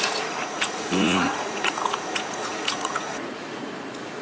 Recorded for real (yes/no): no